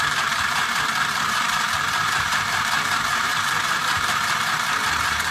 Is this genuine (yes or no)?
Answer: no